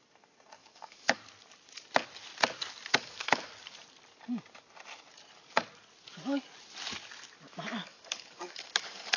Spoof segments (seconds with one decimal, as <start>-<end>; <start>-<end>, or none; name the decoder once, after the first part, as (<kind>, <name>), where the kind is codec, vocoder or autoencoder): 0.6-1.2 (codec, DAC); 2.9-3.5; 7.8-9.2